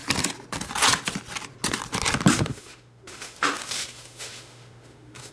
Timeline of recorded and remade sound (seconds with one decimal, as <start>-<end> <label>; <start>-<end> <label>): 0.0-2.3 recorded; 2.3-5.3 remade